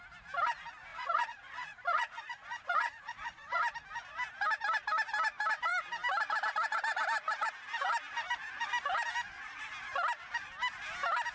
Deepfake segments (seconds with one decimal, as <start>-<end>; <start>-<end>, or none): 0.9-3.6